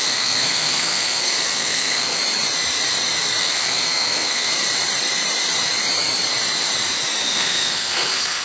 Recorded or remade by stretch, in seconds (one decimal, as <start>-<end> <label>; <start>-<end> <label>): 0.0-2.2 remade; 2.2-3.4 recorded; 3.4-4.5 remade; 4.5-7.2 recorded; 7.2-8.4 remade